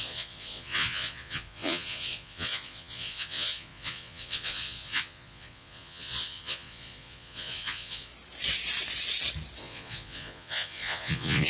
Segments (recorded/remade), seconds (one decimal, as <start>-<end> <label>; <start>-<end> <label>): 0.0-8.1 remade; 8.1-9.6 recorded; 9.6-11.5 remade